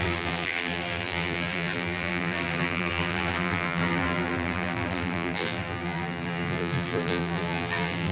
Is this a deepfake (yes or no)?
yes